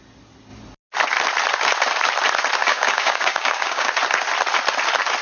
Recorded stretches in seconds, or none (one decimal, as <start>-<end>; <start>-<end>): 0.0-2.6; 3.9-5.2